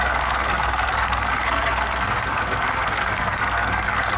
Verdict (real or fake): fake